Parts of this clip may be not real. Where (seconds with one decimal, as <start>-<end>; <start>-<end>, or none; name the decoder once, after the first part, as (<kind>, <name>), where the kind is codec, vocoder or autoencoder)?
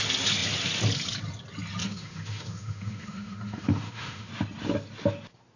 1.8-4.3 (autoencoder, DAC-VAE)